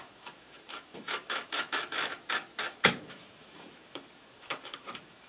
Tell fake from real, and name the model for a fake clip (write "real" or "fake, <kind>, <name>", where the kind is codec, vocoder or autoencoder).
fake, autoencoder, DAC-VAE